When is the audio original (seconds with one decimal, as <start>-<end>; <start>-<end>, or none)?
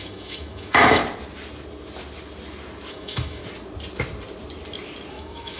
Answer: 1.0-2.9; 3.4-5.1